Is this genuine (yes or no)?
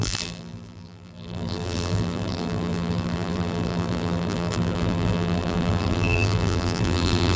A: no